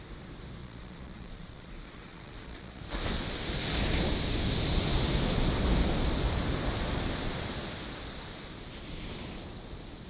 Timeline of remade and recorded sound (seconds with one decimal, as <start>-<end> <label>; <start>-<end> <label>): 0.0-0.6 recorded; 0.6-2.8 remade; 2.8-10.1 recorded